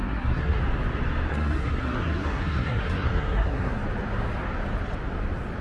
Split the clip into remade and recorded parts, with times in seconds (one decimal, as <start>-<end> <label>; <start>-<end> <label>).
0.0-0.6 remade; 0.6-1.3 recorded; 1.3-3.8 remade; 3.8-5.6 recorded